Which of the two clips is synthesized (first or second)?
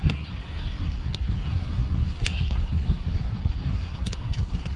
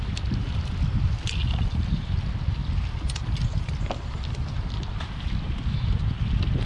first